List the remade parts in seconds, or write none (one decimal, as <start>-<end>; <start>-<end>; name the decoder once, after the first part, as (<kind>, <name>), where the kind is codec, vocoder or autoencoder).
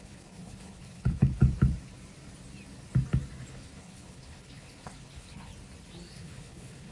0.0-1.4 (codec, HILCodec); 3.5-5.5; 6.1-6.9